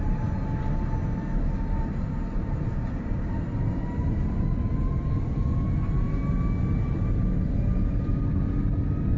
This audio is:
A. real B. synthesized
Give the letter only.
A